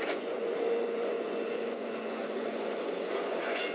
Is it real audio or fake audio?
fake